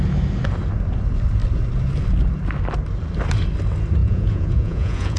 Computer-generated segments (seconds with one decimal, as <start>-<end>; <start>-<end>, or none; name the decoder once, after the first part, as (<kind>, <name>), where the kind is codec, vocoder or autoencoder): 4.0-5.2 (vocoder, Vocos)